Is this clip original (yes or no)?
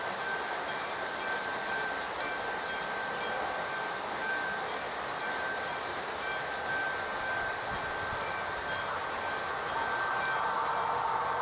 yes